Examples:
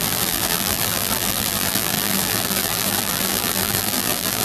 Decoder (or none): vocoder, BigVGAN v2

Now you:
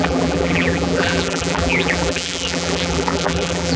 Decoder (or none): vocoder, BigVGAN v2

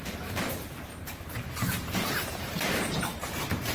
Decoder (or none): vocoder, BigVGAN v2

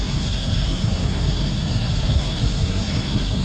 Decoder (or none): codec, SNAC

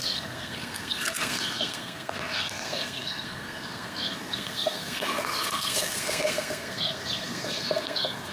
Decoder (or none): codec, SNAC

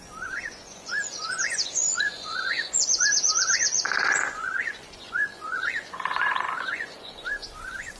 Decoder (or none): vocoder, Vocos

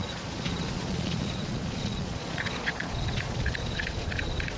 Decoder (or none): vocoder, Vocos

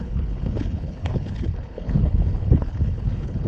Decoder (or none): codec, HILCodec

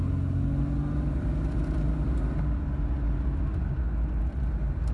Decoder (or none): none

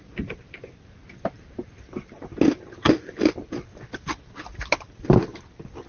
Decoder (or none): none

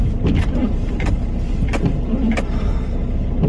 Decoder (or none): none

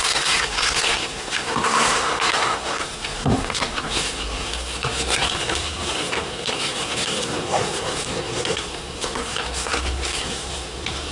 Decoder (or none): codec, SNAC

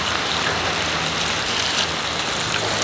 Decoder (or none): vocoder, BigVGAN v2